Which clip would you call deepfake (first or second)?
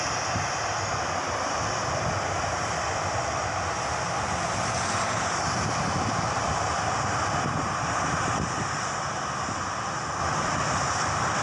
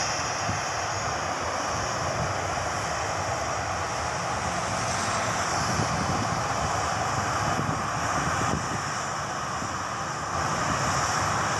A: first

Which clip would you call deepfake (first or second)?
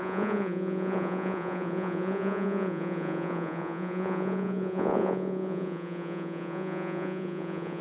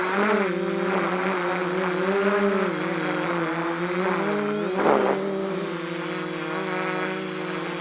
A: first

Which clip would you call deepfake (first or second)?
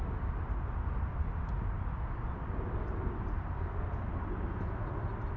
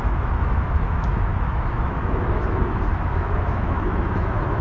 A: second